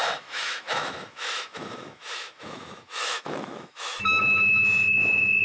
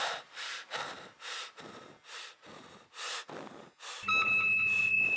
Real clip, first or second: second